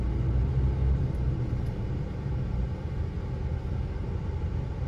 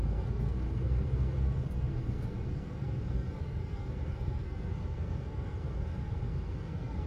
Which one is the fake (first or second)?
second